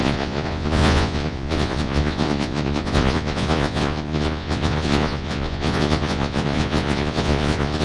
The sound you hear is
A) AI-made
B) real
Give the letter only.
A